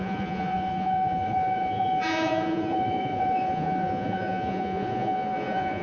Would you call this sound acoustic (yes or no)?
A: no